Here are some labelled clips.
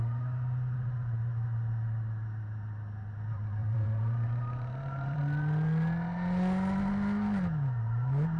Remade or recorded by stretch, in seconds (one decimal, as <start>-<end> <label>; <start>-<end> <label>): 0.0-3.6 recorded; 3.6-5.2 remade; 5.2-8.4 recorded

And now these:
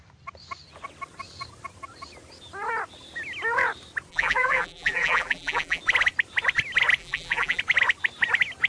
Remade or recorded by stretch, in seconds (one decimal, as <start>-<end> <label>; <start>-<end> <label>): 0.0-4.1 recorded; 4.1-5.8 remade; 5.8-7.0 recorded; 7.0-7.6 remade; 7.6-8.7 recorded

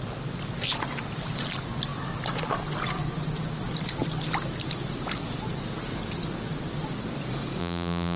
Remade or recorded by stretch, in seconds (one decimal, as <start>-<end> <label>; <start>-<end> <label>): 0.0-7.6 recorded; 7.6-8.2 remade

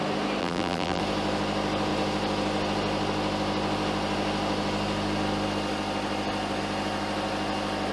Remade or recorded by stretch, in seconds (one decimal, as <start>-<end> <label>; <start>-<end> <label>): 0.0-0.4 recorded; 0.4-1.0 remade; 1.0-7.9 recorded

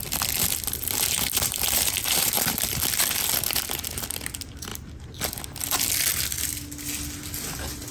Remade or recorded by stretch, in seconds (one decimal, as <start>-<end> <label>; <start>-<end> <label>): 0.0-1.3 recorded; 1.3-2.8 remade; 2.8-7.9 recorded

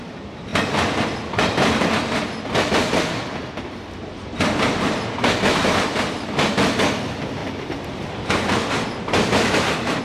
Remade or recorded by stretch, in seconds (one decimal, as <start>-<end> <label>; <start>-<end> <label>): 0.0-0.5 recorded; 0.5-2.7 remade; 2.7-7.4 recorded; 7.4-10.0 remade

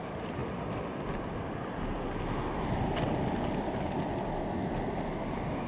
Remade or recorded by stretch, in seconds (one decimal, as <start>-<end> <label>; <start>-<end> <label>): 0.0-5.7 recorded

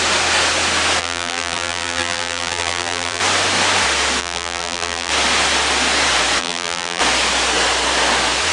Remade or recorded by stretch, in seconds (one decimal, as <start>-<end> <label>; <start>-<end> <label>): 0.0-1.0 recorded; 1.0-3.2 remade; 3.2-4.2 recorded; 4.2-5.1 remade; 5.1-6.4 recorded; 6.4-7.0 remade; 7.0-8.5 recorded